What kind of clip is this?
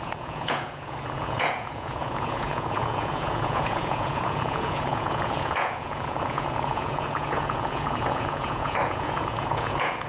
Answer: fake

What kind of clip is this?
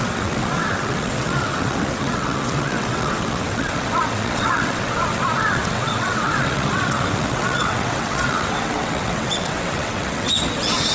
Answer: fake